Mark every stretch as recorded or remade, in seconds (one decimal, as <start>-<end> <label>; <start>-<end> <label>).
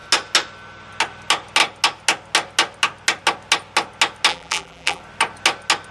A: 0.0-4.3 recorded; 4.3-5.0 remade; 5.0-5.9 recorded